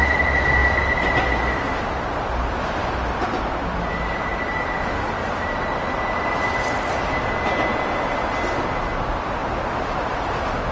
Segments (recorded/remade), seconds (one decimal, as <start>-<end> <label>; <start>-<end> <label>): 0.0-0.6 remade; 0.6-2.1 recorded; 2.1-4.3 remade; 4.3-8.7 recorded; 8.7-9.4 remade; 9.4-10.7 recorded

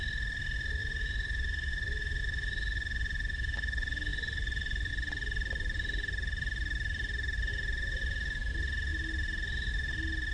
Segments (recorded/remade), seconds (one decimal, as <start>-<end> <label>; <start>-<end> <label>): 0.0-0.8 recorded; 0.8-2.2 remade; 2.2-4.1 recorded; 4.1-4.9 remade; 4.9-7.5 recorded; 7.5-8.5 remade; 8.5-10.3 recorded

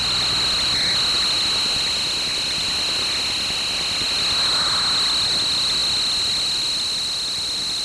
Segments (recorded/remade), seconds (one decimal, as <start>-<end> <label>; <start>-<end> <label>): 0.0-7.8 recorded

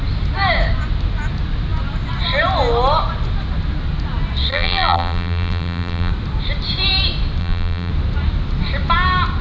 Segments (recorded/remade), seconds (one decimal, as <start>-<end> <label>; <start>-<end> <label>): 0.0-4.5 recorded; 4.5-6.1 remade; 6.1-7.4 recorded; 7.4-7.9 remade; 7.9-9.4 recorded

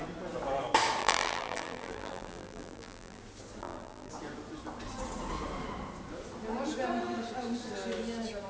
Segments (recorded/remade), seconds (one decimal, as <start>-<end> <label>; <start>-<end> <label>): 0.0-1.0 recorded; 1.0-3.2 remade; 3.2-3.6 recorded; 3.6-4.1 remade; 4.1-8.5 recorded